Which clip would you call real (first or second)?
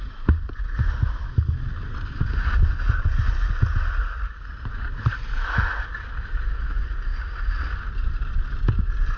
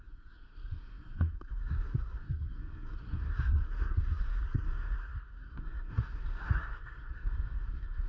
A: first